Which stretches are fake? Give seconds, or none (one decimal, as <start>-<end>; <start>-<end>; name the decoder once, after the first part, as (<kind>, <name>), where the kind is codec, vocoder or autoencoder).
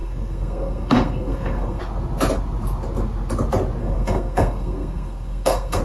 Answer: 0.0-1.8 (codec, SNAC); 3.8-5.8